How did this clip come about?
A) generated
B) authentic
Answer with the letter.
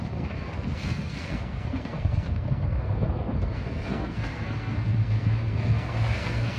A